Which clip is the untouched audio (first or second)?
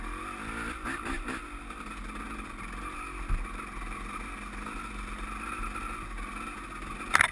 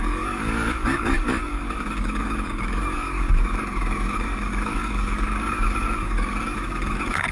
first